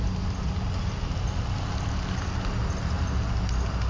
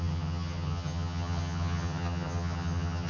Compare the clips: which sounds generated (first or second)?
second